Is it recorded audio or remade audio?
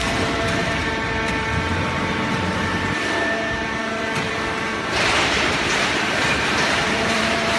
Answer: remade